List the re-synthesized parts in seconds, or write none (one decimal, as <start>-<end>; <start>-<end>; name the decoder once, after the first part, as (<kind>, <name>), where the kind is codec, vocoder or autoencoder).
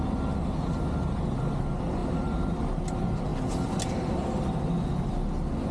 2.0-2.9 (vocoder, BigVGAN v2)